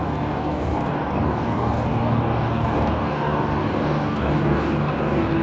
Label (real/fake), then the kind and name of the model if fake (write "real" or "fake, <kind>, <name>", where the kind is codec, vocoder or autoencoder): fake, codec, DAC